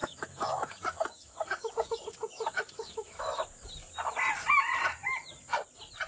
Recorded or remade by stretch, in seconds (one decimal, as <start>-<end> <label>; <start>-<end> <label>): 0.0-3.7 remade; 3.7-6.1 recorded